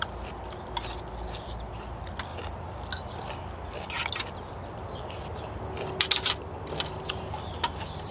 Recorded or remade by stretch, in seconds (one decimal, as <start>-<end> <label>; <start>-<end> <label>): 0.0-8.1 recorded